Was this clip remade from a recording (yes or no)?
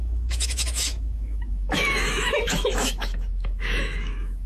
yes